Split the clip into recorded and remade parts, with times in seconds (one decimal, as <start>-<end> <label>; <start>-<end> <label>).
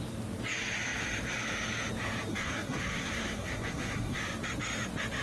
0.0-2.3 recorded; 2.3-4.2 remade; 4.2-5.2 recorded